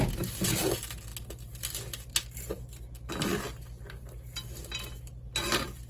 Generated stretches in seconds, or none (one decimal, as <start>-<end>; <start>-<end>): none

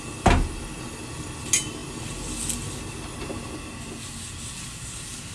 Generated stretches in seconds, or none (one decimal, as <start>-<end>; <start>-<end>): none

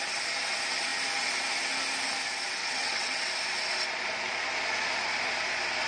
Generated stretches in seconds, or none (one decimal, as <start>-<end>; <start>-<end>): 2.6-3.3

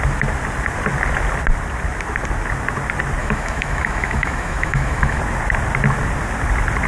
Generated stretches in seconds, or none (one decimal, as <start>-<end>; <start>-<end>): 3.2-5.2

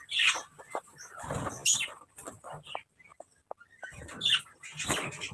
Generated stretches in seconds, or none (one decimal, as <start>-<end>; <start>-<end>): none

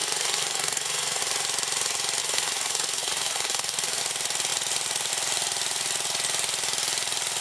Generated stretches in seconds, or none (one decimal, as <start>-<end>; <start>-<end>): 0.0-1.2; 2.2-4.0